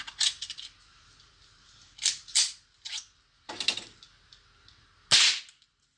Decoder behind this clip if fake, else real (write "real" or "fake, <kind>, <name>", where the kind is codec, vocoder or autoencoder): real